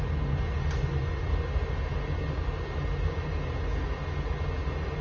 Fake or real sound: real